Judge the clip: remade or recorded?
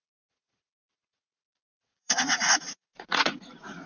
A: remade